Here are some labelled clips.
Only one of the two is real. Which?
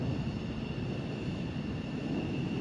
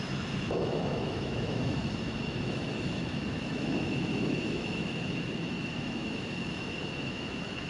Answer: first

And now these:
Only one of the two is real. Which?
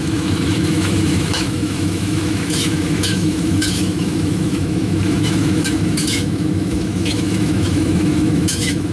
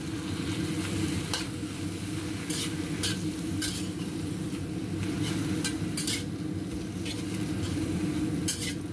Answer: second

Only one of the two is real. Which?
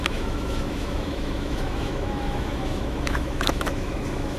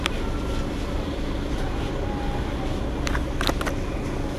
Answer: second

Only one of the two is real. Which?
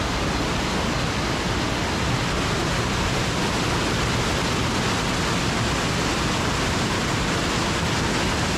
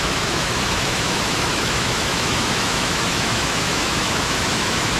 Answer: first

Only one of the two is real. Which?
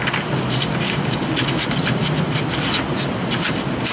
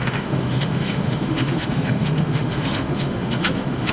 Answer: first